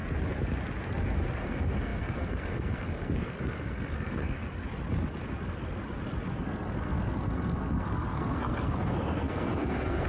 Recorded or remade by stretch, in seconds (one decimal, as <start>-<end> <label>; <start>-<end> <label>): 0.0-1.4 recorded; 1.4-4.4 remade; 4.4-6.4 recorded; 6.4-10.1 remade